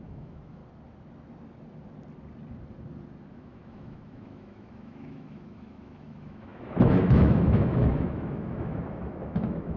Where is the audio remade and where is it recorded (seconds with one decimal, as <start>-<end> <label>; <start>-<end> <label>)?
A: 0.0-0.6 remade; 0.6-3.3 recorded; 3.3-9.8 remade